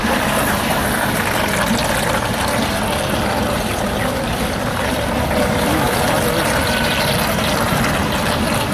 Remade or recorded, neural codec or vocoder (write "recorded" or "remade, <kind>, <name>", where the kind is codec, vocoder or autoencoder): recorded